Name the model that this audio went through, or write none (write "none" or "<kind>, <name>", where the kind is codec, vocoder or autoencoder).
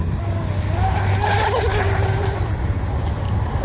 none